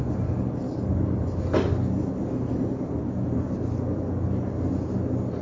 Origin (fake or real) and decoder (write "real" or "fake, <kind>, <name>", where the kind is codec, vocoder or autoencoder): real